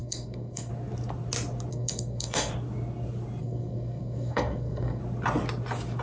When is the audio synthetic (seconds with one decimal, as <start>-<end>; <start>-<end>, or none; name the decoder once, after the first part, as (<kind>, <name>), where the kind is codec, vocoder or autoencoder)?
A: 0.0-0.7 (codec, SNAC); 1.7-2.5; 3.4-5.0

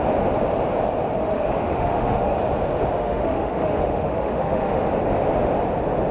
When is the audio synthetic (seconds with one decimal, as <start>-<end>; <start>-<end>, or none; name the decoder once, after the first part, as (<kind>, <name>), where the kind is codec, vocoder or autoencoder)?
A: 1.2-2.4 (autoencoder, DAC-VAE); 3.0-4.8

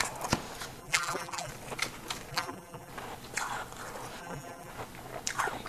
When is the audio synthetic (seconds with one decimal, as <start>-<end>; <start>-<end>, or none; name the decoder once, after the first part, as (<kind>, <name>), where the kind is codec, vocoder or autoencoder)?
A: 0.8-1.5 (vocoder, BigVGAN v2); 2.3-2.9; 4.2-4.7

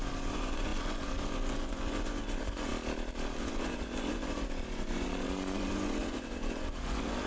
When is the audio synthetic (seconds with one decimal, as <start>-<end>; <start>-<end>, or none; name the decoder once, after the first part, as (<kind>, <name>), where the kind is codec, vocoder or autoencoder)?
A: 0.0-2.7 (vocoder, Vocos); 3.4-7.3

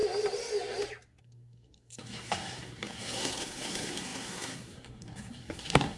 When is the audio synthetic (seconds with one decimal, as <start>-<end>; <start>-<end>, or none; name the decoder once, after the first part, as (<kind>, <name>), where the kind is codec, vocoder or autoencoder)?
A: 1.2-6.0 (codec, SNAC)

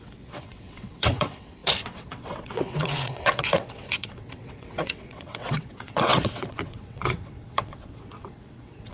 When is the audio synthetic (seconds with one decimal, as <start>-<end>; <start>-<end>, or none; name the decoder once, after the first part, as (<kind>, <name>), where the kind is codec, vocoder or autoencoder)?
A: 0.0-8.9 (vocoder, WaveNeXt)